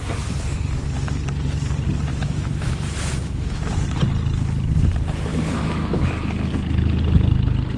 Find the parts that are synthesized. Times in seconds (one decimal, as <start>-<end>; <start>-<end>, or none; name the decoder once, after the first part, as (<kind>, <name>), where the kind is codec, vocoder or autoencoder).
2.1-3.6 (autoencoder, DAC-VAE); 5.3-6.1